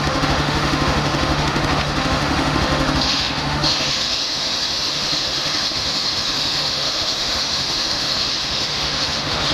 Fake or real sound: fake